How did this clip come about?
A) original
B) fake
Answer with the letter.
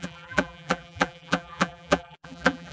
B